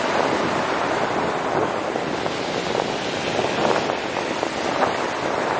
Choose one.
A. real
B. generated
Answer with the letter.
A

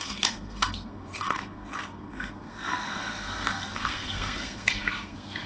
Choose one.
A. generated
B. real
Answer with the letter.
A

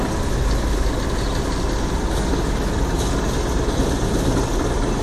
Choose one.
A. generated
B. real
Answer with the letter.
B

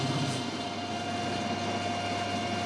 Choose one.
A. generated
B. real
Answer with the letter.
B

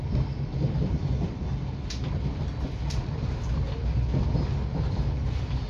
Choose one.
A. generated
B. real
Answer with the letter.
B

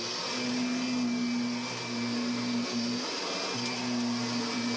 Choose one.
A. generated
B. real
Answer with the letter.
B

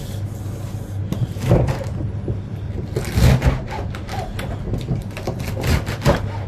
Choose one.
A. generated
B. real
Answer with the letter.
B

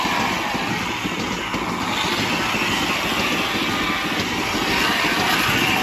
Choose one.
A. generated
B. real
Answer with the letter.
B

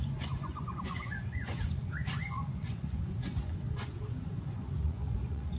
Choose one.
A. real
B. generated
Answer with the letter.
B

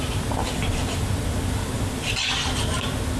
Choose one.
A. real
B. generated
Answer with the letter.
A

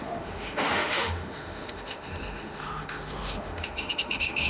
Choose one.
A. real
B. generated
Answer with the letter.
B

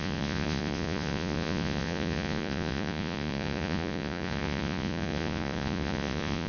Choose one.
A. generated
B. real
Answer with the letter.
A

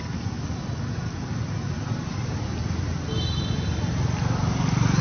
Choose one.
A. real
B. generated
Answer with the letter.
A